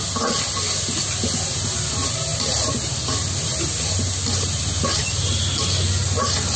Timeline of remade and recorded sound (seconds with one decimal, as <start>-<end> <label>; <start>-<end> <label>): 0.0-6.6 recorded